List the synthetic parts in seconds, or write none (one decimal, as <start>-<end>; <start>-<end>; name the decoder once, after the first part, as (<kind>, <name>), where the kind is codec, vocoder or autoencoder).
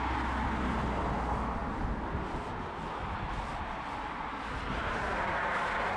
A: none